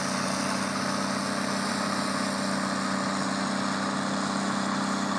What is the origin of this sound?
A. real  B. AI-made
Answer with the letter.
A